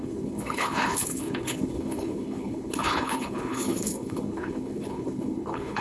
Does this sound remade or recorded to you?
remade